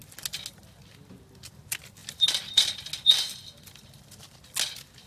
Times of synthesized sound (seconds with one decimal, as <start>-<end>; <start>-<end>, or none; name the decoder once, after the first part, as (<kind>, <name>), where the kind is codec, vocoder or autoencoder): none